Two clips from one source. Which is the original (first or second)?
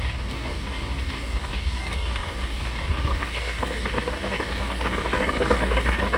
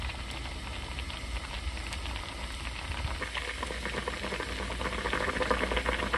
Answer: second